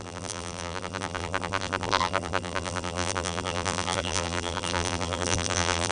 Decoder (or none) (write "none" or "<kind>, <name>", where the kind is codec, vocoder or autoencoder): vocoder, BigVGAN v2